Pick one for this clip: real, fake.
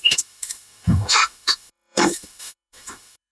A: fake